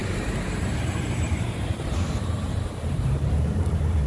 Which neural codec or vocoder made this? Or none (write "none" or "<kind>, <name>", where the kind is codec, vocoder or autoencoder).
vocoder, BigVGAN v2